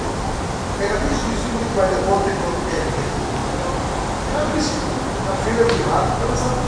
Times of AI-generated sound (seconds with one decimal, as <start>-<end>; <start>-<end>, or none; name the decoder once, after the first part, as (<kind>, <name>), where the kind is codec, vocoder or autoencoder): none

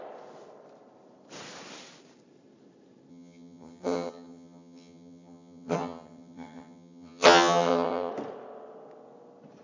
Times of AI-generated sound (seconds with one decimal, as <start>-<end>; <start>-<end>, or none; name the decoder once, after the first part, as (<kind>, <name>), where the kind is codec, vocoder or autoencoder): 3.1-8.1 (vocoder, HiFi-GAN)